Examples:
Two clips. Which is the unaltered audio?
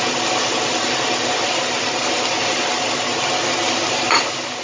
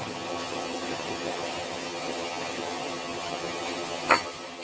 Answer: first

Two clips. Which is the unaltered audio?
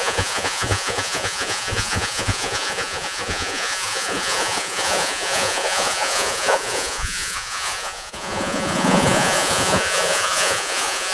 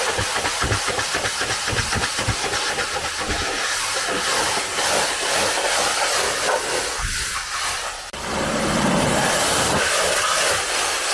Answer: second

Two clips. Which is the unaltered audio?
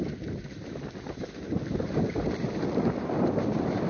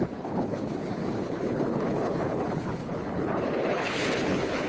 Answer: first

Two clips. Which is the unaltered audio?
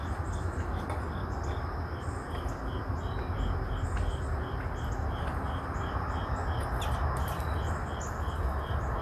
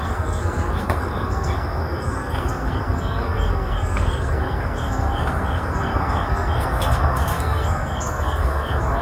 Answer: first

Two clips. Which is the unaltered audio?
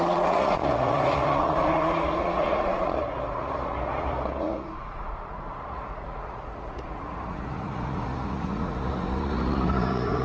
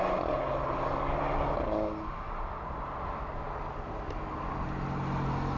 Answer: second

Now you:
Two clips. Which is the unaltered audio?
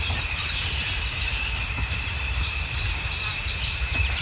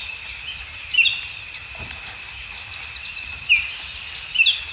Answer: second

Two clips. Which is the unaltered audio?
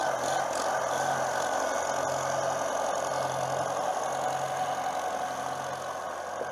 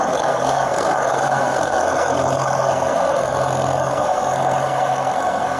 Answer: first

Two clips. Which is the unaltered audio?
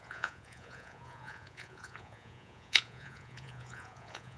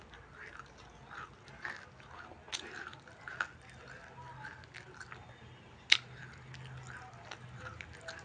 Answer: second